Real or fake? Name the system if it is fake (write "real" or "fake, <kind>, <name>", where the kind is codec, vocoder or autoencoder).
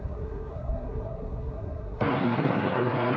fake, codec, SNAC